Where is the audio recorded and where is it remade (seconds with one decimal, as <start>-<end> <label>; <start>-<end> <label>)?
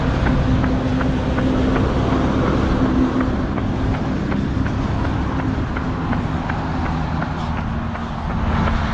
0.0-8.9 recorded